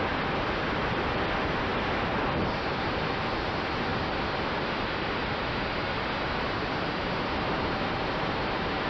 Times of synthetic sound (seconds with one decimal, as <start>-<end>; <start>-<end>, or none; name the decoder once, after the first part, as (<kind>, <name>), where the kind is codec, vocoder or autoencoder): 0.0-8.9 (vocoder, BigVGAN v2)